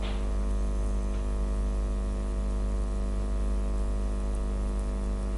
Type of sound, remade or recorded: recorded